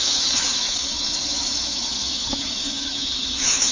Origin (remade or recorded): remade